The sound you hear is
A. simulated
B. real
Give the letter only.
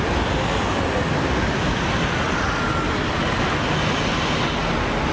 B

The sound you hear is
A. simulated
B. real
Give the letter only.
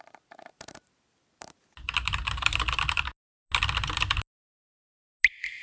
B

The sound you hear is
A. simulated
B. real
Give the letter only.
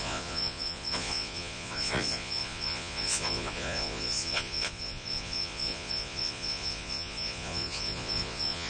A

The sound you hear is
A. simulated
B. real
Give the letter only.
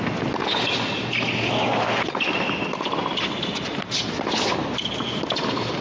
B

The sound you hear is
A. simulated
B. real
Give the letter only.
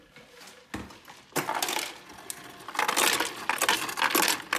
B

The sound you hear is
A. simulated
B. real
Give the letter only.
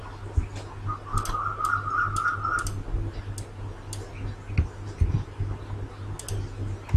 B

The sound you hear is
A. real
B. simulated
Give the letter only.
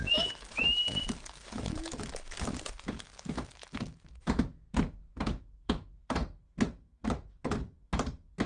B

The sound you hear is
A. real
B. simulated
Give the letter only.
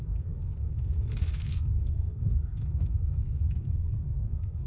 B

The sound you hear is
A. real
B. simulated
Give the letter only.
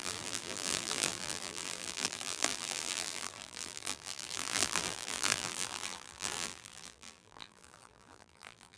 B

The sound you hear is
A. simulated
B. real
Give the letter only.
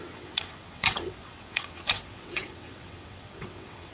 A